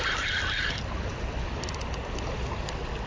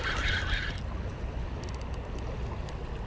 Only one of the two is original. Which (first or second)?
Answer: second